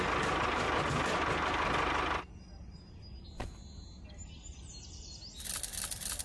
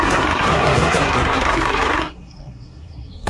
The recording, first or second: first